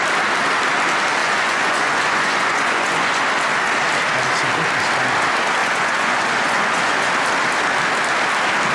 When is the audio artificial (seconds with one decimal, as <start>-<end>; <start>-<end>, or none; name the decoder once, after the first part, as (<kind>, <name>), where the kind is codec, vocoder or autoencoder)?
1.2-3.2 (vocoder, Vocos); 5.6-7.1